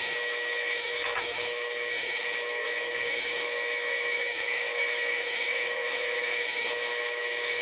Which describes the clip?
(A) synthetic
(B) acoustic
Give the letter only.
A